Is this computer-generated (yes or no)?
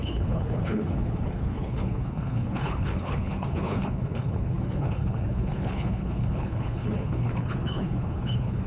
yes